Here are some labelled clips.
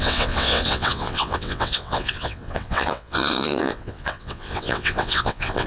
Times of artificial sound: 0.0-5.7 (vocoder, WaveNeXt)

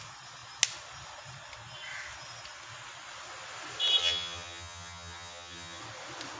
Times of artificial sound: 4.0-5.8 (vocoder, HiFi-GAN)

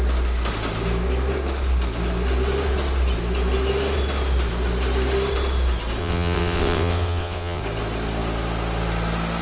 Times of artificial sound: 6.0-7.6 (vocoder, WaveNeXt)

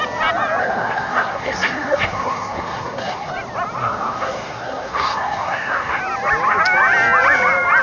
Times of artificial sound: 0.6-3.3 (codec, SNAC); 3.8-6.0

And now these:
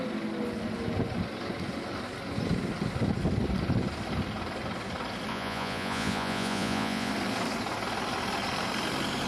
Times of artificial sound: 5.3-7.1 (vocoder, Vocos)